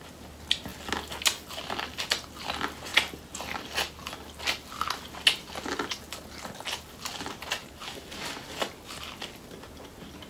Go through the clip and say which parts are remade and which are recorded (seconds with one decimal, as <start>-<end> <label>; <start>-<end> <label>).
0.0-7.6 recorded; 7.6-8.4 remade; 8.4-10.3 recorded